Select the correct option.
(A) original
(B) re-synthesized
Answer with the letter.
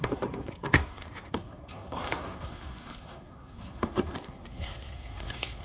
B